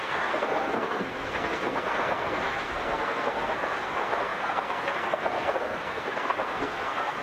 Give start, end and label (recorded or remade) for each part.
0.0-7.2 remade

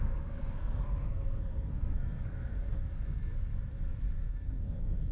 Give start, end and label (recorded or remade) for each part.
0.0-3.5 remade; 3.5-4.3 recorded; 4.3-5.1 remade